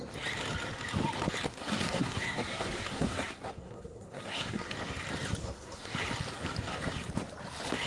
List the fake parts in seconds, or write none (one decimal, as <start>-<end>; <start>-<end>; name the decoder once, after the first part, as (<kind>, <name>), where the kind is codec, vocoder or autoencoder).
1.5-4.7 (codec, SNAC); 5.4-5.9